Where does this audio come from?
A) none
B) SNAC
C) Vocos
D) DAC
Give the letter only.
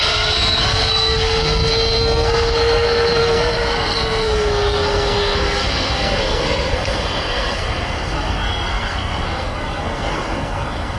B